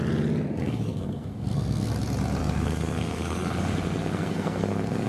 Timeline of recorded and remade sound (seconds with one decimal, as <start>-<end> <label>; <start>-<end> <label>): 0.0-0.6 recorded; 0.6-1.9 remade; 1.9-2.4 recorded; 2.4-3.6 remade; 3.6-4.0 recorded; 4.0-5.1 remade